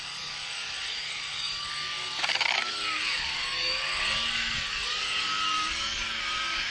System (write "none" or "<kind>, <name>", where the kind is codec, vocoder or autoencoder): codec, DAC